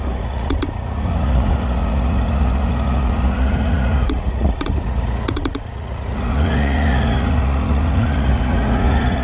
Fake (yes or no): yes